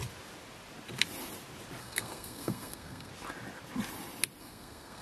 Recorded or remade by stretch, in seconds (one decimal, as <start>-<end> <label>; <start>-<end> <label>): 0.0-1.8 recorded; 1.8-3.1 remade; 3.1-4.4 recorded; 4.4-5.0 remade